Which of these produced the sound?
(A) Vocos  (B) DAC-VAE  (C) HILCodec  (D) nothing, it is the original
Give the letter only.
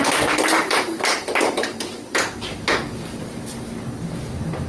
D